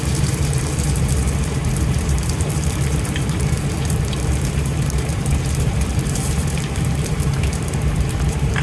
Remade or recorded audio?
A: remade